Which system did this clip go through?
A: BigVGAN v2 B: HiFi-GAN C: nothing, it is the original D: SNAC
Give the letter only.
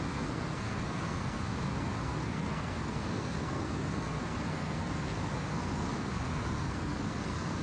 D